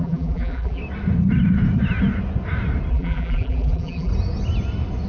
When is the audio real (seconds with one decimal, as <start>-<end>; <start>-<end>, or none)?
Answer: 0.8-2.9; 4.1-5.1